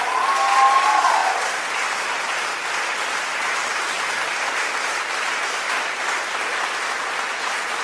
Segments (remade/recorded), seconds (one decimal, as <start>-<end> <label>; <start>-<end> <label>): 0.0-1.2 recorded; 1.2-2.7 remade; 2.7-3.3 recorded; 3.3-5.4 remade; 5.4-7.8 recorded